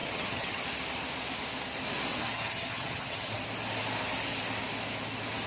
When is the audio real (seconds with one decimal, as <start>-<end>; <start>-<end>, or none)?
0.6-2.1; 3.3-5.5